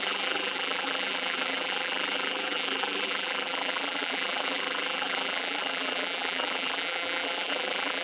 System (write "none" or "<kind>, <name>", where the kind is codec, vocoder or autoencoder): vocoder, BigVGAN v2